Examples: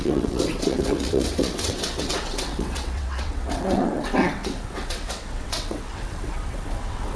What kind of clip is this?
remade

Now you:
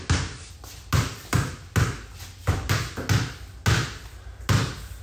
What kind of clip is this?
recorded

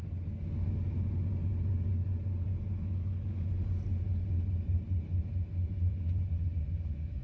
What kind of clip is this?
recorded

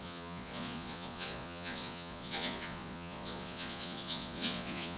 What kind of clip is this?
remade